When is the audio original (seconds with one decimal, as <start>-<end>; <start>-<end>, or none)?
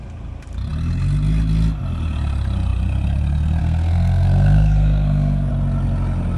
0.0-3.6; 5.5-6.4